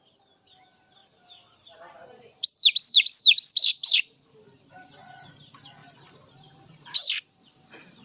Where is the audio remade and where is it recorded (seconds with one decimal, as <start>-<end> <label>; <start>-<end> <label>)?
0.0-1.0 recorded; 1.0-4.7 remade; 4.7-8.0 recorded